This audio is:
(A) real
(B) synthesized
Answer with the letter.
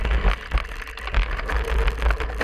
A